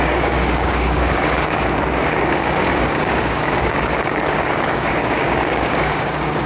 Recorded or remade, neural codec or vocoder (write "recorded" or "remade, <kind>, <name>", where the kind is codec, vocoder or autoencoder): remade, codec, DAC